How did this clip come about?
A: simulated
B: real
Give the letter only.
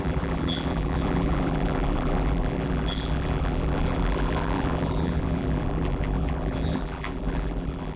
A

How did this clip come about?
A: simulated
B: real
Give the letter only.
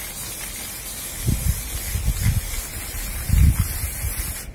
B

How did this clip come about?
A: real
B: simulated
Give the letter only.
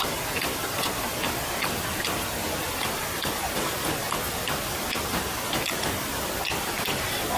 B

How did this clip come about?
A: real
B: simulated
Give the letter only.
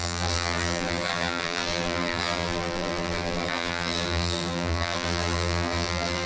B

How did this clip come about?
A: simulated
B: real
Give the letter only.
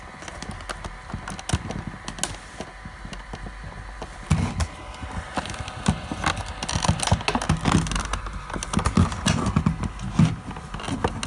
B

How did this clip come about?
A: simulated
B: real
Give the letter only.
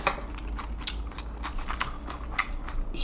B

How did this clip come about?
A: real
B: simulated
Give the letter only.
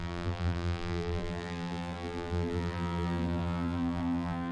B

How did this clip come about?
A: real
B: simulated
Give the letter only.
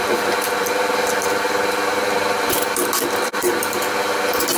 B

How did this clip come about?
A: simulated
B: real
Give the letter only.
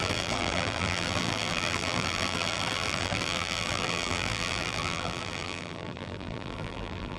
A